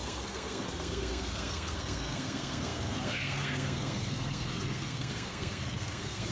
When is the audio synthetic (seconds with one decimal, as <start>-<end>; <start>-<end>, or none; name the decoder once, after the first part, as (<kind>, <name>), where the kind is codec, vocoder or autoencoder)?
0.0-6.3 (codec, SNAC)